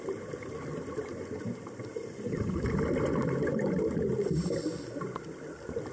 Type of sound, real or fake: real